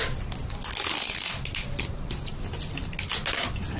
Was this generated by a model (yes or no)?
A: no